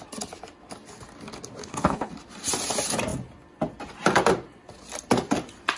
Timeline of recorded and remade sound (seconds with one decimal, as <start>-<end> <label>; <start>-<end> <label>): 0.0-1.6 recorded; 1.6-2.1 remade; 2.1-5.8 recorded